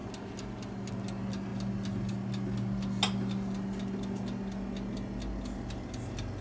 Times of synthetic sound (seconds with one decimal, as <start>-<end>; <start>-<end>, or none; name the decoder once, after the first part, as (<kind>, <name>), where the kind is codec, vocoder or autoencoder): none

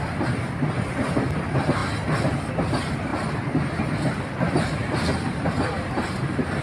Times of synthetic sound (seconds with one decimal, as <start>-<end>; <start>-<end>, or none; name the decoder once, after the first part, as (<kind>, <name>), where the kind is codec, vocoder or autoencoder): 4.8-6.6 (vocoder, BigVGAN v2)